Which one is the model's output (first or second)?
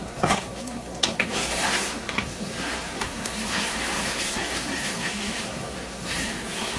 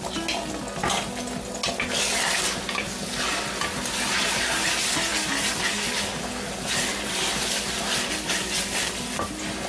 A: first